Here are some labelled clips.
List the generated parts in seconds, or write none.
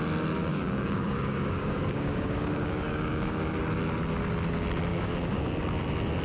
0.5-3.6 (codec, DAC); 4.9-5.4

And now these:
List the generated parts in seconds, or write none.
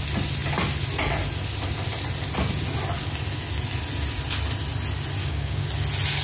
5.2-5.7 (codec, DAC)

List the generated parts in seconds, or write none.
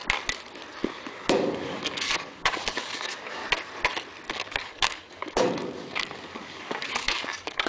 1.1-3.4 (codec, DAC); 4.3-7.7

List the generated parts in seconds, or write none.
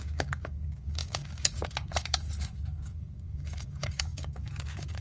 0.0-5.0 (codec, DAC)